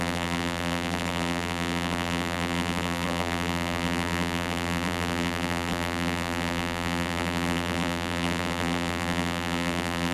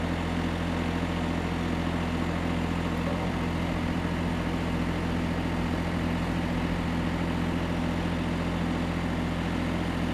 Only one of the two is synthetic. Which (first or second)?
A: first